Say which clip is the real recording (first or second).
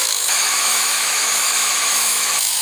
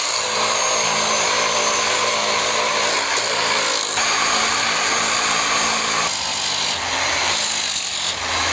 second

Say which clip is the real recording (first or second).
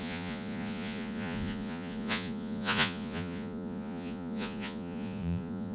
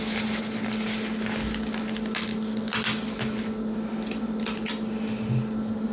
second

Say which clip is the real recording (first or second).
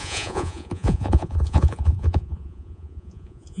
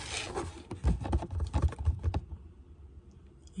second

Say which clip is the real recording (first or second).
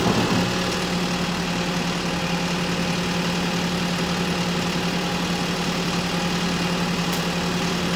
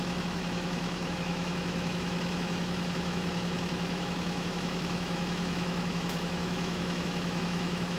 first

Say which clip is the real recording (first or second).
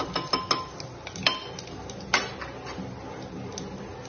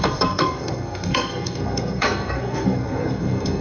first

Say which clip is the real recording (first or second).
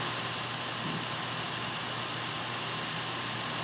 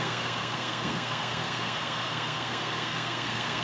first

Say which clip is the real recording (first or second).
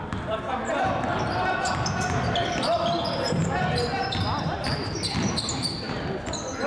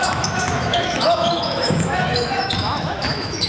first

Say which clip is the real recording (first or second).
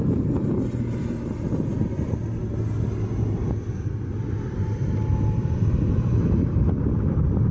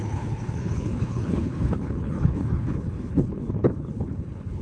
first